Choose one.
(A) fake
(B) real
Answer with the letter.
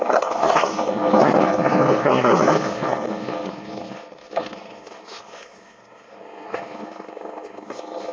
A